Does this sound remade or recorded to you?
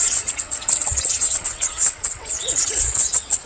remade